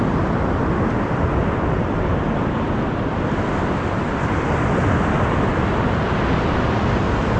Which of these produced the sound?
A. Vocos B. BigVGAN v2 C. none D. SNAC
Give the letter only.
C